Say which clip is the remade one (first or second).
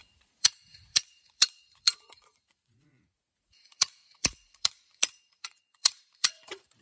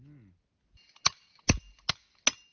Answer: first